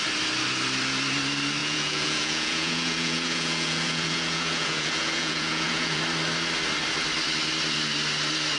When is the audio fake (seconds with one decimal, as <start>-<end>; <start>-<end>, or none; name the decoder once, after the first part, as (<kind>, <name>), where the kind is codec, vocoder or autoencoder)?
1.6-6.0 (vocoder, Vocos)

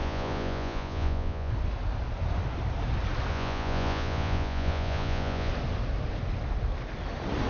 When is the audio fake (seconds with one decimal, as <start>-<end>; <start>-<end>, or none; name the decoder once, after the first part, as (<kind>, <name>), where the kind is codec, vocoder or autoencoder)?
0.0-1.5 (vocoder, Vocos); 3.3-5.5

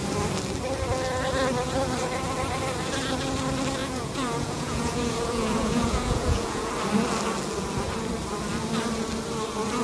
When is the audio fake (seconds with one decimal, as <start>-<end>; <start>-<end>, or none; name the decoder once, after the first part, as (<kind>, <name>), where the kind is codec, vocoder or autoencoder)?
3.8-6.7 (vocoder, Vocos)

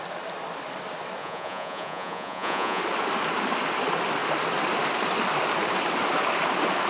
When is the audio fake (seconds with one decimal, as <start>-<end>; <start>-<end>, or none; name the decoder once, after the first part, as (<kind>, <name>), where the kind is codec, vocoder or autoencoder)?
1.2-2.8 (vocoder, Vocos)

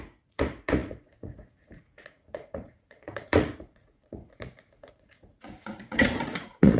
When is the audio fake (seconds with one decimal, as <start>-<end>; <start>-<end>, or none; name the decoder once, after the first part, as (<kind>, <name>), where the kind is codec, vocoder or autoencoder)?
0.0-6.8 (vocoder, Vocos)

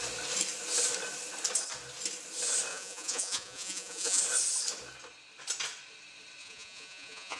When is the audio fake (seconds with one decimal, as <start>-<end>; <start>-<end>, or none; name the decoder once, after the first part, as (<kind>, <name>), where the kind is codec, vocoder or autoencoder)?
2.7-4.2 (vocoder, Vocos); 6.4-7.4

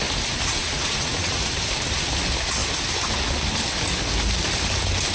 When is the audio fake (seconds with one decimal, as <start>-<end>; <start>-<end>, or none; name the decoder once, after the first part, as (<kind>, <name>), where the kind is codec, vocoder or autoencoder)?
0.6-1.5 (vocoder, Vocos)

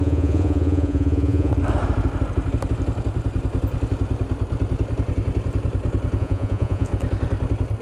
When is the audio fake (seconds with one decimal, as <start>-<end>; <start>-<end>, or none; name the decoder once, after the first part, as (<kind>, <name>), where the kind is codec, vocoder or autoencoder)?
0.0-1.5 (vocoder, Vocos); 6.2-6.9